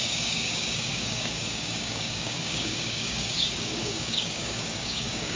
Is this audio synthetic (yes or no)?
yes